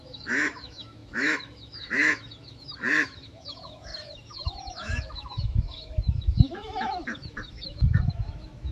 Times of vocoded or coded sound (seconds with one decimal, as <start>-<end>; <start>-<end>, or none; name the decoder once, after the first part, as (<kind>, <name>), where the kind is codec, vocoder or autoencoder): 0.0-8.7 (autoencoder, DAC-VAE)